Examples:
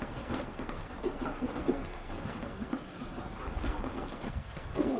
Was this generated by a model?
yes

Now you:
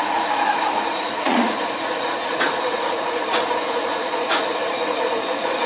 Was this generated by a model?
yes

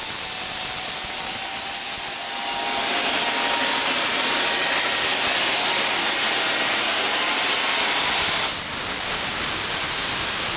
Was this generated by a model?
no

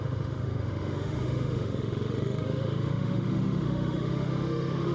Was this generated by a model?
yes